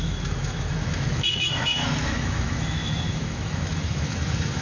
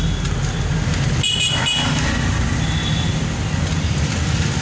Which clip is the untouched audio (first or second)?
second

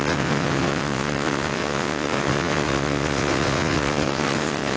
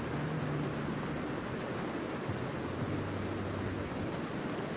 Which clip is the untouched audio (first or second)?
second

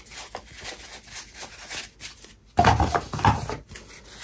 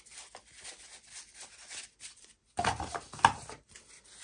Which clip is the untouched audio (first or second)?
first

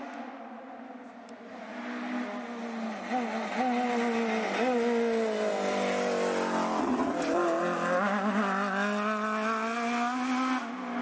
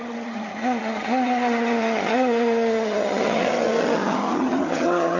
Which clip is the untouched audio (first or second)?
first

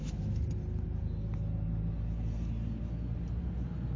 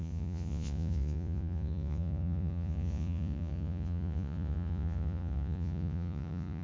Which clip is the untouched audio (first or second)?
first